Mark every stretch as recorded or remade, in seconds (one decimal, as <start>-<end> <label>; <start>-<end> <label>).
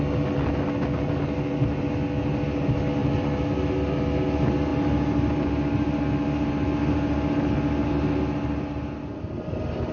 0.0-9.9 recorded